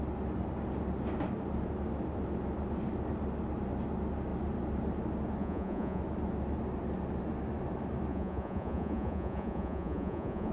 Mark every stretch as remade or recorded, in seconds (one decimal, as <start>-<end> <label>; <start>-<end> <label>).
0.0-5.4 recorded; 5.4-6.0 remade; 6.0-8.1 recorded; 8.1-10.5 remade